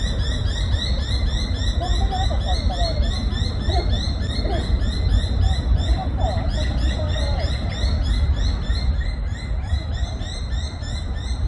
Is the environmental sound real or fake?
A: real